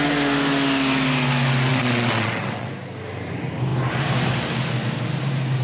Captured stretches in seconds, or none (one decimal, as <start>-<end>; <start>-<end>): 0.0-1.7; 2.7-5.6